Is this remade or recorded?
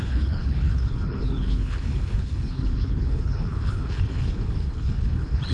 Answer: remade